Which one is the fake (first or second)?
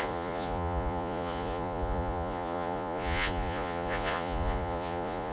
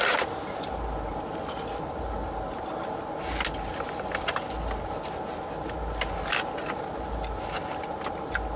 first